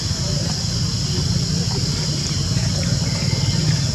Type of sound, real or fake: real